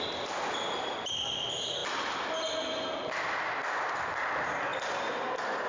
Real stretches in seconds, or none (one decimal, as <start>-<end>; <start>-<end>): 0.0-5.7